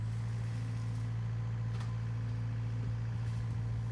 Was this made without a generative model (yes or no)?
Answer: yes